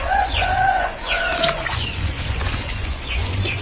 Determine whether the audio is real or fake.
fake